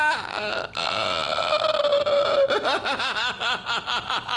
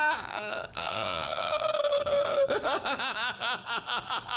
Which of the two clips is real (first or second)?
first